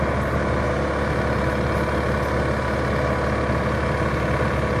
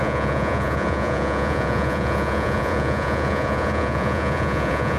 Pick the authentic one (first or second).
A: first